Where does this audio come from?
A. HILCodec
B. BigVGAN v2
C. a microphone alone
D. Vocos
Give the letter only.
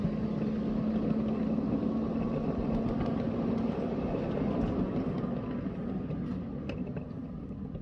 C